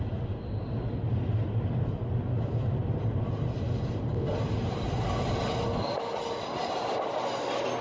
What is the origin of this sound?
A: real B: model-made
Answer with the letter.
A